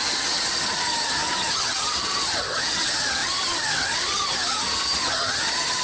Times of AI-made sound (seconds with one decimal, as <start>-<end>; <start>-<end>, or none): 0.0-5.8